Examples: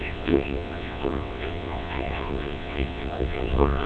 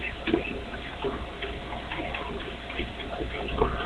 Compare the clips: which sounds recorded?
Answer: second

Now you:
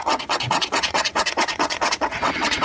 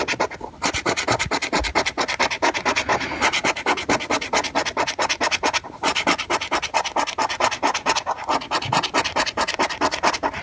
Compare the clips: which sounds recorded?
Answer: second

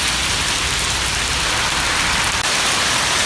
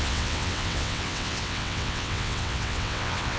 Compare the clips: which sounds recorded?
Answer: first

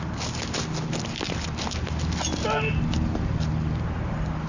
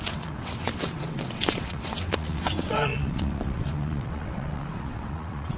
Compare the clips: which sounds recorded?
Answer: first